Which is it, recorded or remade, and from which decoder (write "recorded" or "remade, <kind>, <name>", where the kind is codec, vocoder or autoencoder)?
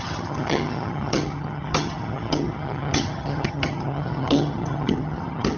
remade, vocoder, HiFi-GAN